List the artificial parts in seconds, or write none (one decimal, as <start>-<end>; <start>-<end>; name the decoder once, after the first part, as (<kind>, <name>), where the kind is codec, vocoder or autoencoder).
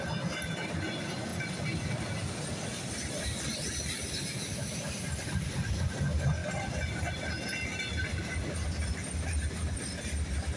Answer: none